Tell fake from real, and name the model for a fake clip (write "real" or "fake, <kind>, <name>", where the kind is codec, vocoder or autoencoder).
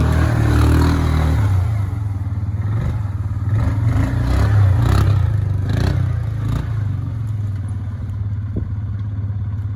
real